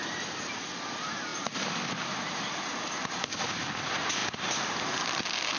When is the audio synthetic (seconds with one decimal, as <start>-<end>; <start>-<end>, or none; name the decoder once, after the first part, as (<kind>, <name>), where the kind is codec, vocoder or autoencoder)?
none